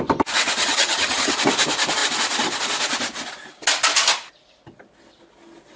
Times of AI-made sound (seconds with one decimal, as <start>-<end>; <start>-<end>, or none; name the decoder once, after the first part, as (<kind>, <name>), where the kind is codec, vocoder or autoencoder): 0.6-1.3 (vocoder, HiFi-GAN)